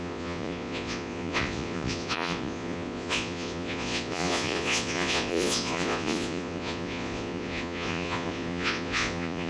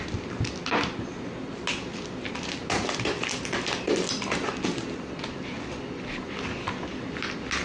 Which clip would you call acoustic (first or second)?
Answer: second